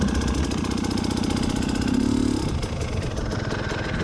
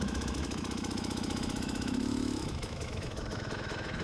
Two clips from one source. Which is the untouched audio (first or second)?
first